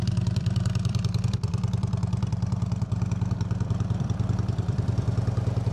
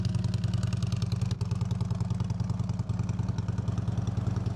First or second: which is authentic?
second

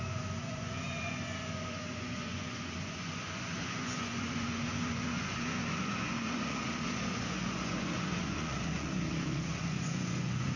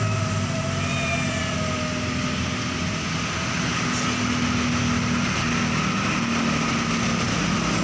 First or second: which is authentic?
second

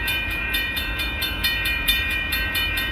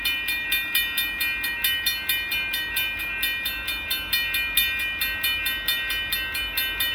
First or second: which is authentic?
second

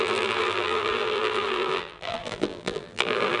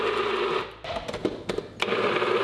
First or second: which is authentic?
second